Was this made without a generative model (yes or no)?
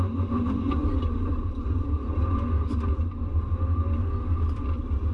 no